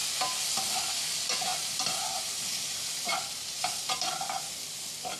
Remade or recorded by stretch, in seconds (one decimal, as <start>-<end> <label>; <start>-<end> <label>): 0.0-1.5 recorded; 1.5-4.5 remade; 4.5-5.2 recorded